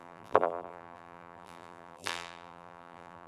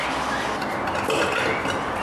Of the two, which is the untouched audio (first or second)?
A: second